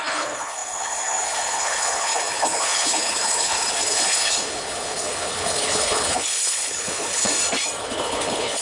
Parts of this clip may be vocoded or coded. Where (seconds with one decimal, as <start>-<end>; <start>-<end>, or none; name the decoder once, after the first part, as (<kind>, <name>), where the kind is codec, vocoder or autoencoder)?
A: 0.0-7.3 (codec, HILCodec); 7.8-8.6